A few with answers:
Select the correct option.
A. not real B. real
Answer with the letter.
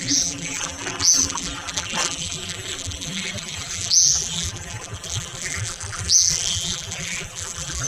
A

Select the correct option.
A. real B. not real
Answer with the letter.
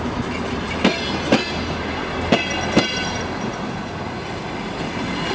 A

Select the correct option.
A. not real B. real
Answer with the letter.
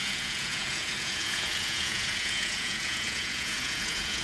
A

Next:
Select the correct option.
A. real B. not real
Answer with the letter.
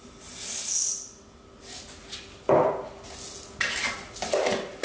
A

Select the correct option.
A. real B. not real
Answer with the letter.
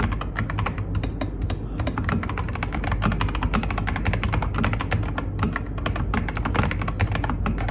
A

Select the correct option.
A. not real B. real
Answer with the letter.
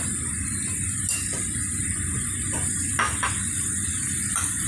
B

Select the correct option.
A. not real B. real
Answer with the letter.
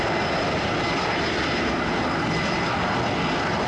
B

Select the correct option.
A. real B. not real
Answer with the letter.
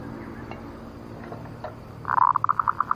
A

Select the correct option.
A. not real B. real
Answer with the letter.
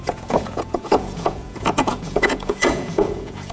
A